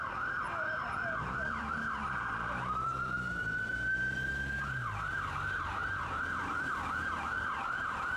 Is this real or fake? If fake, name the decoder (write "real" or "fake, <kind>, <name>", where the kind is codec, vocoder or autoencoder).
fake, vocoder, BigVGAN v2